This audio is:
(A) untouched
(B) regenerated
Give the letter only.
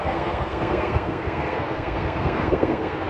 B